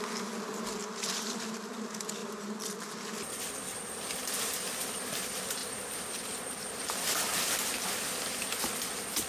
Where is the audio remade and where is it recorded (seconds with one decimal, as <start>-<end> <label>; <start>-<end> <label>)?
0.0-0.8 recorded; 0.8-1.8 remade; 1.8-2.2 recorded; 2.2-3.6 remade; 3.6-5.6 recorded; 5.6-6.7 remade; 6.7-9.3 recorded

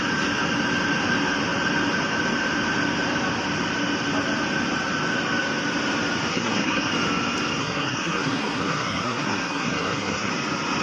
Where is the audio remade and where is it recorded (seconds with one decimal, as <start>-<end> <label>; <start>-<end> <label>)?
0.0-6.3 recorded; 6.3-6.9 remade; 6.9-7.6 recorded; 7.6-10.3 remade; 10.3-10.8 recorded

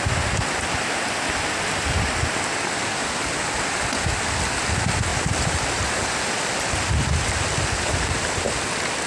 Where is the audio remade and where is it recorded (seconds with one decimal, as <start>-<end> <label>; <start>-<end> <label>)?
0.0-5.1 recorded; 5.1-5.9 remade; 5.9-9.1 recorded

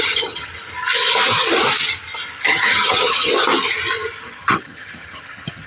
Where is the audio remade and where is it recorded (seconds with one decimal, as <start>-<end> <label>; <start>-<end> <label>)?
0.0-0.5 remade; 0.5-2.4 recorded; 2.4-3.3 remade; 3.3-4.2 recorded; 4.2-5.7 remade

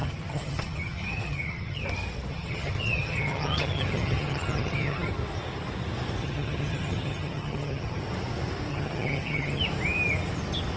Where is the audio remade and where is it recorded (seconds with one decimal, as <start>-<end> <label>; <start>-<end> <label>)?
0.0-1.8 remade; 1.8-2.3 recorded; 2.3-5.1 remade; 5.1-6.2 recorded; 6.2-8.0 remade; 8.0-8.7 recorded; 8.7-9.6 remade; 9.6-10.8 recorded